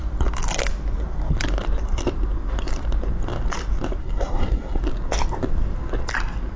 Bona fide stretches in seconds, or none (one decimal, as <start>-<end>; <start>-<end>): 0.0-4.0; 4.8-6.6